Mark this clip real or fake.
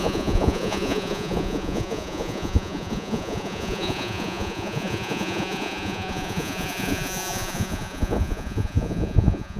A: fake